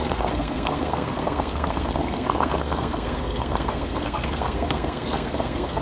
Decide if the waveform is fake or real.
fake